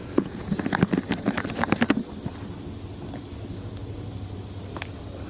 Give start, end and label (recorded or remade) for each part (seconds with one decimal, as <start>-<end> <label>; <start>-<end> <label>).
0.0-0.6 remade; 0.6-5.3 recorded